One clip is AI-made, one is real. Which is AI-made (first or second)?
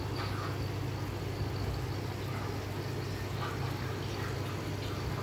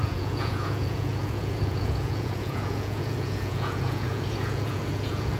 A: second